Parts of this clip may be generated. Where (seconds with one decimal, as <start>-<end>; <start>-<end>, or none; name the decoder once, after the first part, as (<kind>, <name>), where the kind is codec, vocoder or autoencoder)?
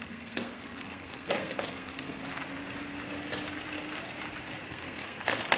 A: 0.0-2.2 (codec, SNAC); 4.6-5.6